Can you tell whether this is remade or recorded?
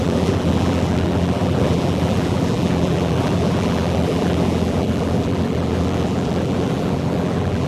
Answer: remade